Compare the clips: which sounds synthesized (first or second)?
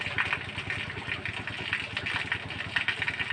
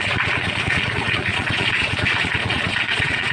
second